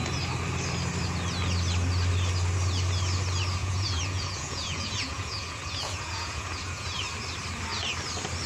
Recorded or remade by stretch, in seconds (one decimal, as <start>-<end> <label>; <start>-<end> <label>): 0.0-3.6 recorded; 3.6-7.0 remade; 7.0-8.5 recorded